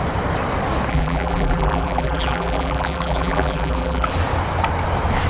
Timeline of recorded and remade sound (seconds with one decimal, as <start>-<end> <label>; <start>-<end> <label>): 0.0-0.9 recorded; 0.9-4.1 remade; 4.1-5.3 recorded